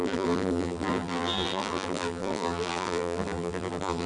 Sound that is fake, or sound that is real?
fake